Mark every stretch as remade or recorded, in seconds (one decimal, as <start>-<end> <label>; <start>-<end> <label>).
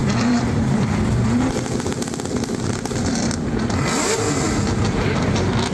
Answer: 0.0-5.7 recorded